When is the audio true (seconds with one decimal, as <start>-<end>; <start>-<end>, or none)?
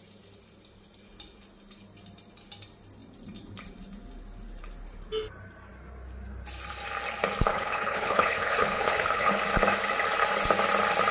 0.0-7.5; 9.3-11.1